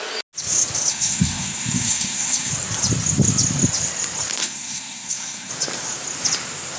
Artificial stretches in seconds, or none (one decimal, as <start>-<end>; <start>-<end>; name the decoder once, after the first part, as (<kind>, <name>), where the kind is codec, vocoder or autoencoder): 0.9-2.5 (codec, SNAC); 4.4-5.5